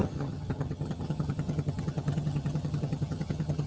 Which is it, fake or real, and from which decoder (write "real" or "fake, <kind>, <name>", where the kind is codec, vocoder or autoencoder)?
fake, vocoder, HiFi-GAN